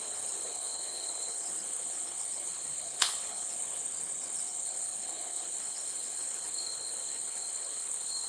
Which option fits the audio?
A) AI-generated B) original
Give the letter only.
A